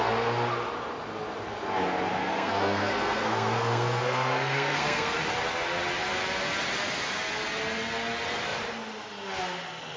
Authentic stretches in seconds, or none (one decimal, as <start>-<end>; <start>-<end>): 0.0-2.2; 5.2-10.0